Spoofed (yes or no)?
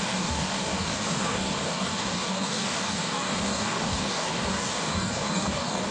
yes